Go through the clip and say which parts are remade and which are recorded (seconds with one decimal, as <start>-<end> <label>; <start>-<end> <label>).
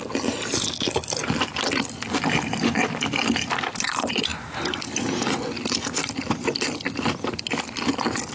0.0-8.3 recorded